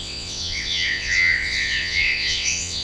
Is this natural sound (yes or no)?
no